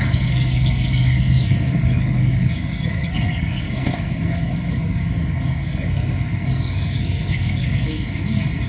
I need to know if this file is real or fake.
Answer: fake